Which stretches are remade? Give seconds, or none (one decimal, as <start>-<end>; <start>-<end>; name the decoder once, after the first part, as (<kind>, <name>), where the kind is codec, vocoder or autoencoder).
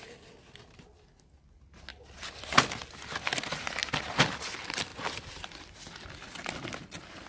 none